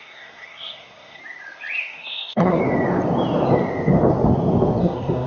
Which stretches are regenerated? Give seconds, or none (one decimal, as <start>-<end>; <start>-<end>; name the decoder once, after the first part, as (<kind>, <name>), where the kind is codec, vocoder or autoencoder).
0.0-1.2 (codec, SNAC); 1.8-2.6; 4.8-5.3